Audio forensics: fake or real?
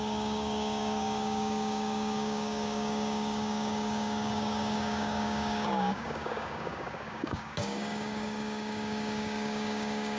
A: fake